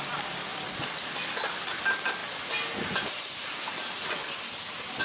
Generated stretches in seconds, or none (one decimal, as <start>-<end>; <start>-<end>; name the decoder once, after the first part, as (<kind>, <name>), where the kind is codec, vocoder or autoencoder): none